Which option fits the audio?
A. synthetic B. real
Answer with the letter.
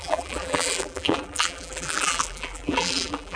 A